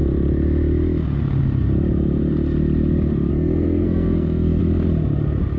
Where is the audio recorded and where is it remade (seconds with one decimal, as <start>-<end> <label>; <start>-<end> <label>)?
0.0-3.3 recorded; 3.3-4.6 remade; 4.6-5.6 recorded